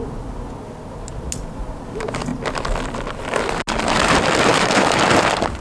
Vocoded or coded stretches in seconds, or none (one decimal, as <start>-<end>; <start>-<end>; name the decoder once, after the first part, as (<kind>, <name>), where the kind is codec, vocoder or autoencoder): 4.5-5.0 (autoencoder, DAC-VAE)